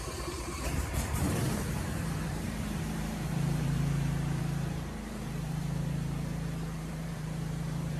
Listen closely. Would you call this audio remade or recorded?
remade